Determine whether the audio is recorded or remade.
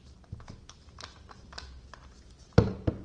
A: recorded